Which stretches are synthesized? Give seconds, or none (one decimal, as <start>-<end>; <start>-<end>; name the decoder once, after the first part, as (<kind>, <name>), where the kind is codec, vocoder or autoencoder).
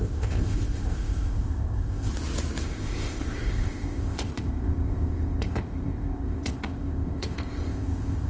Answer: 0.0-2.1 (codec, ZipCodec); 2.6-8.3